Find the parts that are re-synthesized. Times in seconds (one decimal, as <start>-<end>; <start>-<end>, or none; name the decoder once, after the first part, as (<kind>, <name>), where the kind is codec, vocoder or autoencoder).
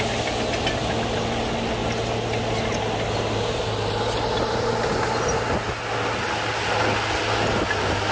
none